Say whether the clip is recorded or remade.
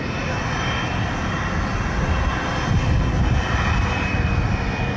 recorded